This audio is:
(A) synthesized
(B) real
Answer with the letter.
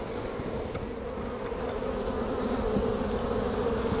B